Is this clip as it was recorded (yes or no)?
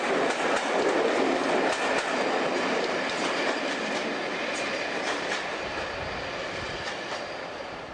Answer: yes